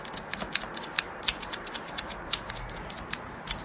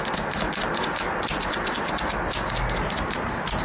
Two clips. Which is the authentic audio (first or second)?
second